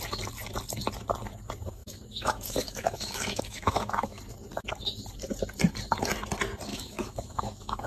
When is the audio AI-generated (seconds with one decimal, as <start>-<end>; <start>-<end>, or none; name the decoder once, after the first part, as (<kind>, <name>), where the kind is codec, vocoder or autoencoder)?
1.8-4.2 (autoencoder, DAC-VAE); 6.7-7.9

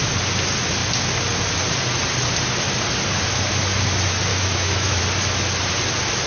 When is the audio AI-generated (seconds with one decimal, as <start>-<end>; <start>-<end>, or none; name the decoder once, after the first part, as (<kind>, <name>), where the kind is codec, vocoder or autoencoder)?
4.3-5.0 (autoencoder, DAC-VAE)

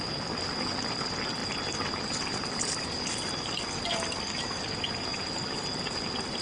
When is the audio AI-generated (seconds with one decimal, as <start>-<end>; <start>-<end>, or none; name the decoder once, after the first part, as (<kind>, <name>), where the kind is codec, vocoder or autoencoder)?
none

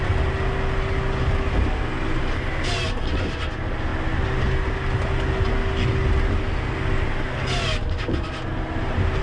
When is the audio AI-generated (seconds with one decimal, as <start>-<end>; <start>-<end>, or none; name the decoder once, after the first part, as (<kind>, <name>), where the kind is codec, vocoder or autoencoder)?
none